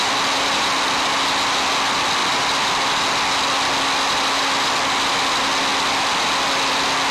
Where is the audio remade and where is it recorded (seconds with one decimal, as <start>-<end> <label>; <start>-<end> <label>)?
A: 0.0-7.1 recorded

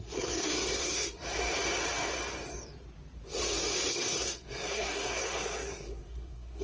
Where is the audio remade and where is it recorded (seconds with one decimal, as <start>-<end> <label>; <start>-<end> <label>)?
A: 0.0-1.2 remade; 1.2-3.9 recorded; 3.9-6.6 remade

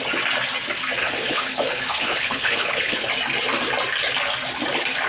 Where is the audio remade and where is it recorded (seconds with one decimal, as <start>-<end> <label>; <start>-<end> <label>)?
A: 0.0-1.0 recorded; 1.0-3.1 remade; 3.1-5.1 recorded

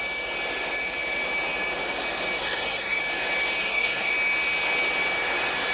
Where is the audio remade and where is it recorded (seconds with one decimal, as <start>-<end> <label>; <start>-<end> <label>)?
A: 0.0-2.4 recorded; 2.4-3.0 remade; 3.0-3.6 recorded; 3.6-4.1 remade; 4.1-5.7 recorded